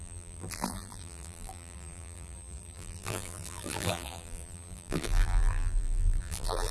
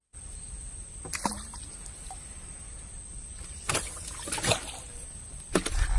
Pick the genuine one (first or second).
second